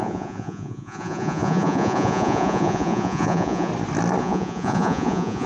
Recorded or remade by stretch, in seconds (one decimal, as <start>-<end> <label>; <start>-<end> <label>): 0.0-3.7 remade; 3.7-4.2 recorded; 4.2-5.5 remade